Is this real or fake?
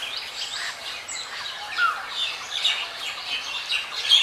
real